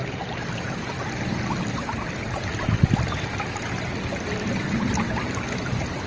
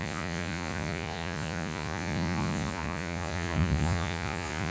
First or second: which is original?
first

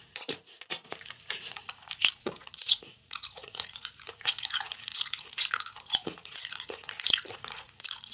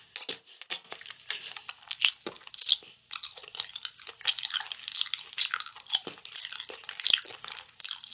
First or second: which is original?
second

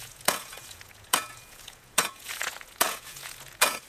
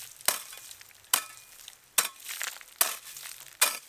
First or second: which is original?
second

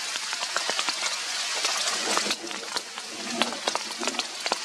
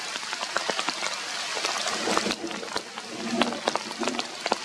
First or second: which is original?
second